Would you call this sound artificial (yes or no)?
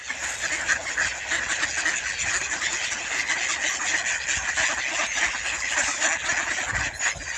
no